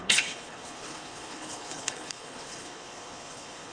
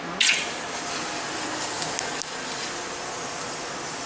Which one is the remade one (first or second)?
first